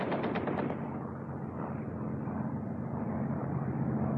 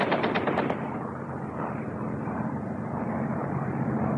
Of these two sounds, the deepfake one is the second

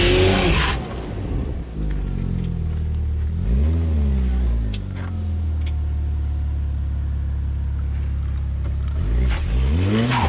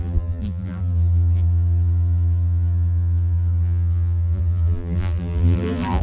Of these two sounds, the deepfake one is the second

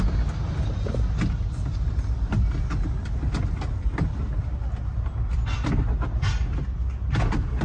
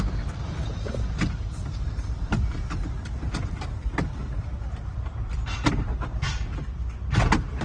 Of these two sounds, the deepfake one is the second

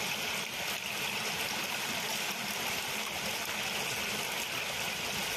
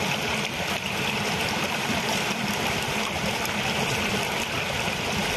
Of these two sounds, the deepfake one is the second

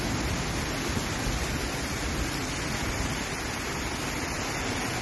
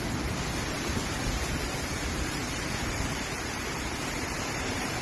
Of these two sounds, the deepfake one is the second